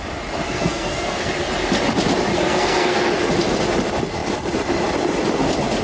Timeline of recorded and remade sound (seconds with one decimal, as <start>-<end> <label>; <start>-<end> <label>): 0.0-0.4 recorded; 0.4-1.3 remade; 1.3-2.3 recorded; 2.3-3.1 remade; 3.1-5.8 recorded